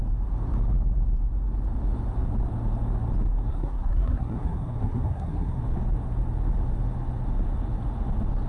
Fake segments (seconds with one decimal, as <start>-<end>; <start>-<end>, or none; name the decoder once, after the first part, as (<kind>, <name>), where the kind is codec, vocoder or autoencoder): 3.5-5.6 (codec, SNAC)